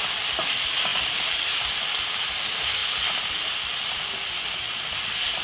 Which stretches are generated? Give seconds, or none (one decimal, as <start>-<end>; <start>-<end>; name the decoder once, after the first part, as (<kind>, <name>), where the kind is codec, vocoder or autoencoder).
none